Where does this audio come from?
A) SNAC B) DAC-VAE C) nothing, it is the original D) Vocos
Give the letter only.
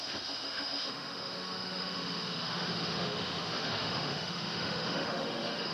B